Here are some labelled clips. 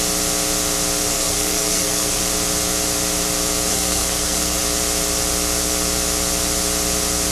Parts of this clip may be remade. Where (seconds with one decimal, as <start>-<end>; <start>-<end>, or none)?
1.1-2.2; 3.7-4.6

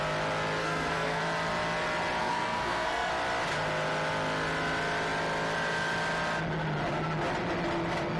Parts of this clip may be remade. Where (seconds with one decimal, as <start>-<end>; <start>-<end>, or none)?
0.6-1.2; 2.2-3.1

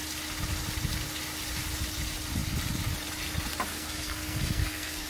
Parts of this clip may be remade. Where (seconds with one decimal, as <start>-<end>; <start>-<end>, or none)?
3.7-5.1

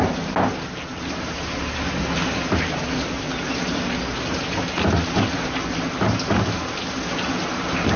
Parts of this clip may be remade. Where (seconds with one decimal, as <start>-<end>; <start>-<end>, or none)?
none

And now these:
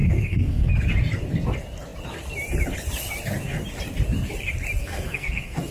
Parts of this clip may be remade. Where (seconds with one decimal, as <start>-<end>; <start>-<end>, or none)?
0.0-0.7; 4.8-5.7